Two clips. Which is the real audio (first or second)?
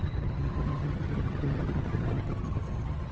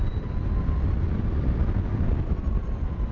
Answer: second